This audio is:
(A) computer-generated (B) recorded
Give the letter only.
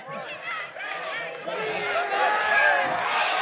B